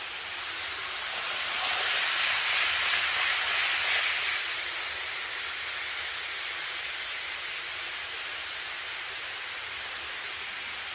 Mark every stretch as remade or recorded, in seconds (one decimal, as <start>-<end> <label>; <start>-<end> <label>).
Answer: 0.0-8.3 recorded; 8.3-10.9 remade

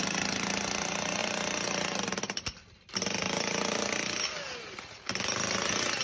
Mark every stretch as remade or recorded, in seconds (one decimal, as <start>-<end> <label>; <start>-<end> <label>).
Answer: 0.0-1.2 recorded; 1.2-4.8 remade; 4.8-6.0 recorded

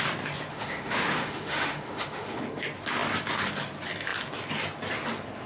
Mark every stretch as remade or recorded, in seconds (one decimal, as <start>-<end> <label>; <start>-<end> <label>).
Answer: 0.0-0.5 recorded; 0.5-2.4 remade; 2.4-5.5 recorded

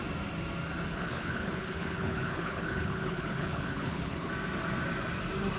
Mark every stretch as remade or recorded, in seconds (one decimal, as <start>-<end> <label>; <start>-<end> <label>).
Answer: 0.0-0.9 recorded; 0.9-4.3 remade; 4.3-5.6 recorded

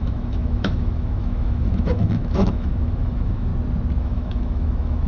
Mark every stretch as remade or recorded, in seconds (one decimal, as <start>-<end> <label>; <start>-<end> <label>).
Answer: 0.0-3.5 remade; 3.5-4.0 recorded; 4.0-5.1 remade

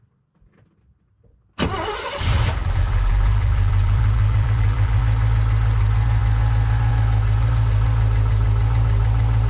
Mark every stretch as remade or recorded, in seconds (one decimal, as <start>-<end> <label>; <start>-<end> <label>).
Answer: 0.0-2.6 recorded; 2.6-5.0 remade; 5.0-9.5 recorded

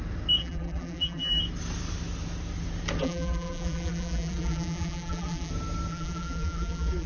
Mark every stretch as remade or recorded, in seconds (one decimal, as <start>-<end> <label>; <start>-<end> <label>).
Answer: 0.0-0.4 recorded; 0.4-1.4 remade; 1.4-3.0 recorded; 3.0-5.5 remade; 5.5-5.9 recorded; 5.9-7.1 remade